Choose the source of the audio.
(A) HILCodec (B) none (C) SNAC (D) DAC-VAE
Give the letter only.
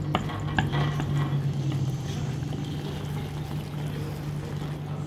B